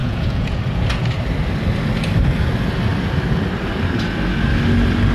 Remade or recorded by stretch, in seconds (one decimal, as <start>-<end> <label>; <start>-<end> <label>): 0.0-0.6 remade; 0.6-5.1 recorded